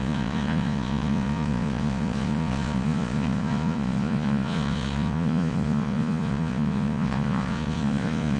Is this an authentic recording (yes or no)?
no